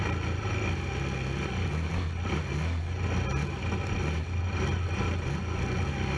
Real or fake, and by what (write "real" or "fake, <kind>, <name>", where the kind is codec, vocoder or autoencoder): real